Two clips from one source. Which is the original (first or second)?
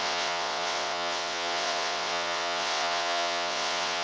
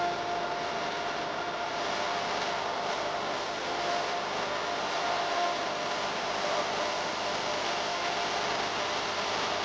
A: second